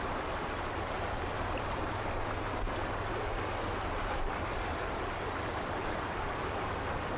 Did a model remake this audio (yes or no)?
yes